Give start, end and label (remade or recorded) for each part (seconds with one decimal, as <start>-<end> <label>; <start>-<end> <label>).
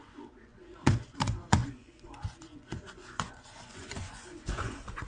0.0-5.1 remade